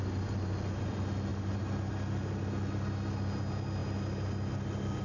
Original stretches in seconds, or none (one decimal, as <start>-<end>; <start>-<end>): 0.0-5.0

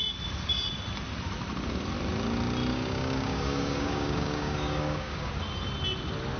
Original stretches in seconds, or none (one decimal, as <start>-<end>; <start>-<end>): 0.0-2.7; 5.3-6.4